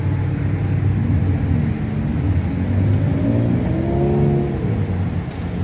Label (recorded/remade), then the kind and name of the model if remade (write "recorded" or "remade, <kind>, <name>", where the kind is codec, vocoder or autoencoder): recorded